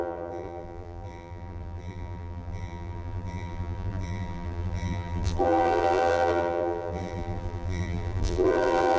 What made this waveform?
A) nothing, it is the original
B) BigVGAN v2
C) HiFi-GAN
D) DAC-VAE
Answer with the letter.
B